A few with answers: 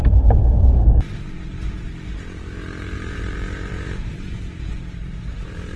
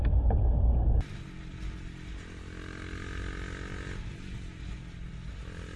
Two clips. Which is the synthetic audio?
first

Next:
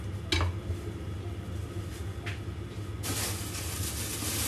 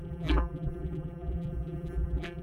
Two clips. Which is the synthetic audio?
second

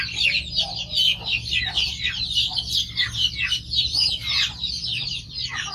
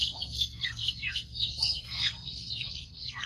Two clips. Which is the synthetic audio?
second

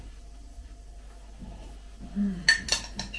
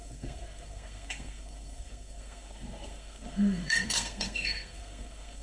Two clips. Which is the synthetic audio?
second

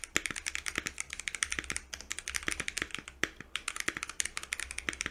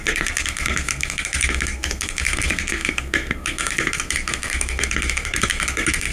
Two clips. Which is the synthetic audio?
second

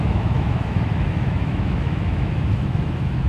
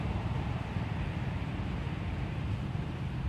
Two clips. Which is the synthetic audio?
first